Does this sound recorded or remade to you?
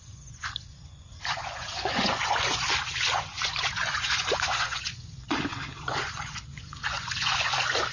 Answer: remade